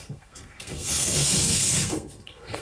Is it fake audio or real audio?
fake